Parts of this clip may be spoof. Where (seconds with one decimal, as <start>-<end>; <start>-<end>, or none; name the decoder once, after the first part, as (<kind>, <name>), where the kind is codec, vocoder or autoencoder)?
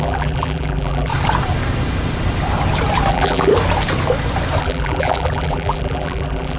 0.0-1.1 (vocoder, BigVGAN v2); 3.1-3.5; 4.6-6.6